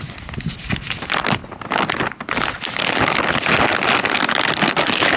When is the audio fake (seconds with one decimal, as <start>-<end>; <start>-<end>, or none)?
none